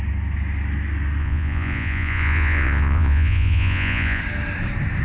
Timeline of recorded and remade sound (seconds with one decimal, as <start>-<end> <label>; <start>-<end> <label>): 0.0-1.2 recorded; 1.2-4.2 remade; 4.2-5.0 recorded